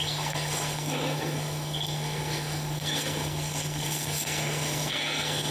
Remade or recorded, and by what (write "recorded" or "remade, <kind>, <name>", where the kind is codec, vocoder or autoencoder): remade, codec, SNAC